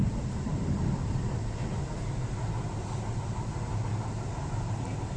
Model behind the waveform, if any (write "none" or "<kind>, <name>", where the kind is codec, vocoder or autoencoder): none